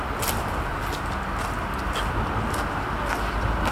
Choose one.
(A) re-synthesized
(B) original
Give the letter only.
B